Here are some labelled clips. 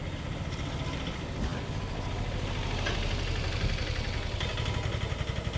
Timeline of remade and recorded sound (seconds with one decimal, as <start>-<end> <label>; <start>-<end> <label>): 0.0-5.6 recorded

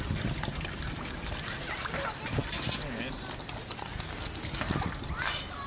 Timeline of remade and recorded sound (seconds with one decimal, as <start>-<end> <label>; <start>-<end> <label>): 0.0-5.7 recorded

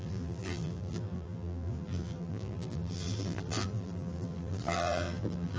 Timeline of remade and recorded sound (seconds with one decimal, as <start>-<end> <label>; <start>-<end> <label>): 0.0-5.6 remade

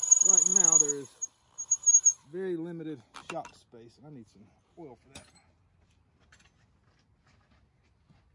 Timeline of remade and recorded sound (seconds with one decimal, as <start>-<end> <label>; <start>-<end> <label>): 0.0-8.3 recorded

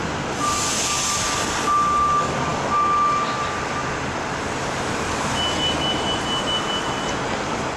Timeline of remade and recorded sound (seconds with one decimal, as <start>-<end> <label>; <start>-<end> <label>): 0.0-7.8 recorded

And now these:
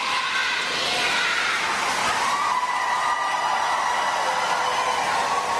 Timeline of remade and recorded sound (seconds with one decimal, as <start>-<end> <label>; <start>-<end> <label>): 0.0-5.6 recorded